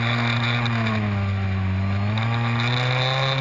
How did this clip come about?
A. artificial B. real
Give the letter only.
B